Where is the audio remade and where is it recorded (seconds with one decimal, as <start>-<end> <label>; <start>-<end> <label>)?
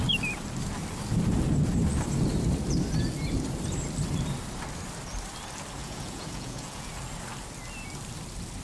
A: 0.0-5.8 recorded; 5.8-6.9 remade; 6.9-8.6 recorded